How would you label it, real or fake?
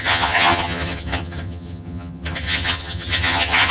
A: fake